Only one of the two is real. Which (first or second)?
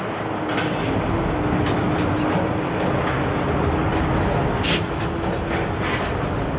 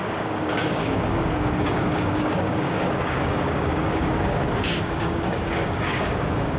first